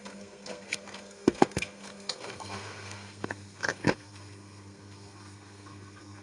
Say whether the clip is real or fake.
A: fake